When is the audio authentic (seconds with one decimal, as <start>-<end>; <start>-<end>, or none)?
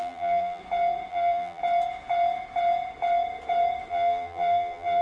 0.6-1.1; 1.6-3.9